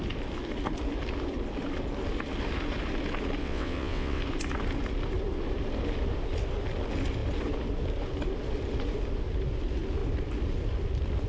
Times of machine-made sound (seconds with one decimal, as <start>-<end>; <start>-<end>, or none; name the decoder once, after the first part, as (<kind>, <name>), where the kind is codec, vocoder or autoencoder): 3.4-4.2 (vocoder, WaveNeXt)

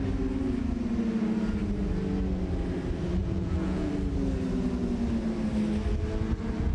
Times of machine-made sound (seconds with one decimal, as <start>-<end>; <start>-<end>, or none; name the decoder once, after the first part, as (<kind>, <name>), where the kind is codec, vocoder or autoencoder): 3.2-3.9 (vocoder, Vocos)